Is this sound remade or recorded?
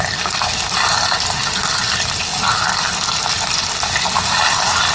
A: recorded